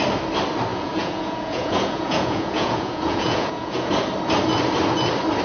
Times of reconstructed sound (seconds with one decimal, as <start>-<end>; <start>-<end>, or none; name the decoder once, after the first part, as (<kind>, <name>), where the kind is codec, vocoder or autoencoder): 0.7-3.9 (vocoder, Vocos)